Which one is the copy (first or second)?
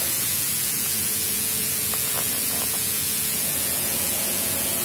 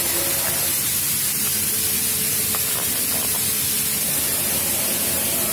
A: first